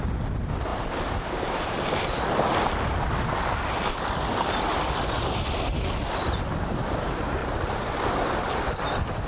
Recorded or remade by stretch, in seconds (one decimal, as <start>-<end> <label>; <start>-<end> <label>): 0.0-7.4 recorded; 7.4-8.6 remade; 8.6-9.3 recorded